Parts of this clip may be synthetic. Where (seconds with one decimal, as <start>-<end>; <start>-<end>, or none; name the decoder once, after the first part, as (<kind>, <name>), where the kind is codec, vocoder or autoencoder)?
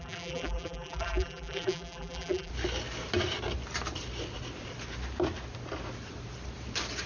0.0-2.5 (vocoder, BigVGAN v2)